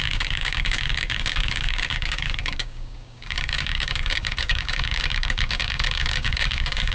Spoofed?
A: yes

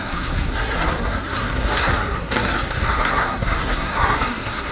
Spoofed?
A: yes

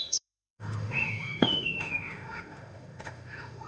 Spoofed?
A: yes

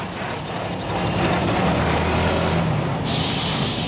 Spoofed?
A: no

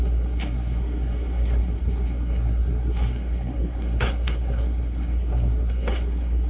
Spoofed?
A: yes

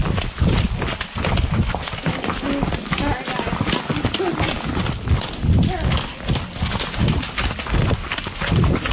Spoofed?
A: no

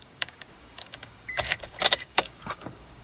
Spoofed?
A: yes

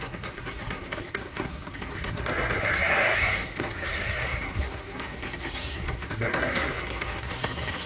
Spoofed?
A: yes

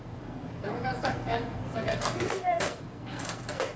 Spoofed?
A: yes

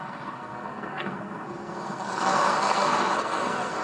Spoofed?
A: yes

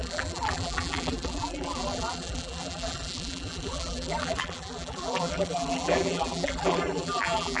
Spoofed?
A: yes